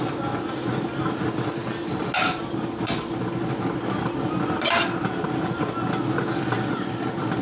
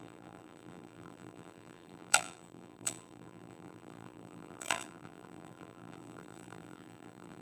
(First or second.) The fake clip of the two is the second